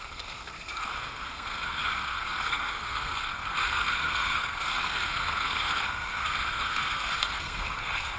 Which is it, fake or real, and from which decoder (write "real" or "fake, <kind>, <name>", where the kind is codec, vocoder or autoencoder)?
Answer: fake, codec, SNAC